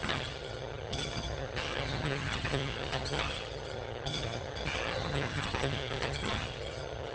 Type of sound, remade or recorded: remade